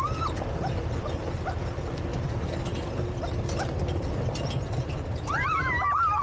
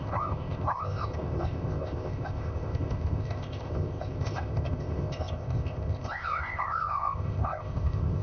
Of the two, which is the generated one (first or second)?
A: second